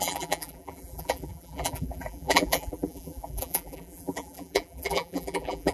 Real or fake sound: fake